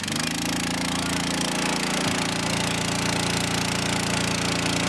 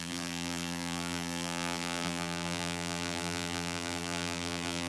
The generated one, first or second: second